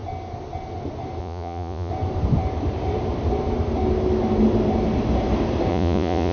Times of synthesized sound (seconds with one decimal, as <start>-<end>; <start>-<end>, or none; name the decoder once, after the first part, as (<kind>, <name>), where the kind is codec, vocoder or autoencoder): 1.2-1.9 (vocoder, Vocos); 5.7-6.3